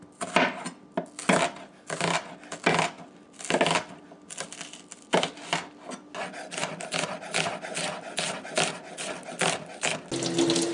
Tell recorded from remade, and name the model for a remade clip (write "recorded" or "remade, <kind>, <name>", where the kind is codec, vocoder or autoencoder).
recorded